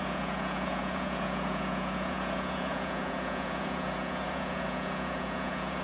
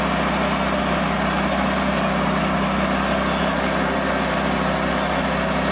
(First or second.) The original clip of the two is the second